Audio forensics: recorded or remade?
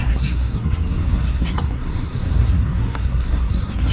remade